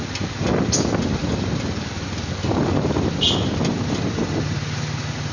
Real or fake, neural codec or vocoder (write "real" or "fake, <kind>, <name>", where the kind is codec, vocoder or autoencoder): real